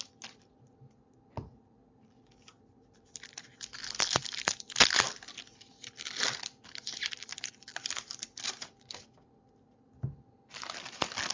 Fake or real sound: real